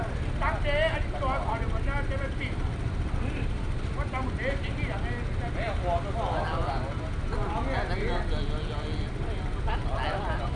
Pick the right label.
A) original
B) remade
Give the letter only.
A